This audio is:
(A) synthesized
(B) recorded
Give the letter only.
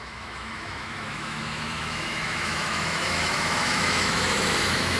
A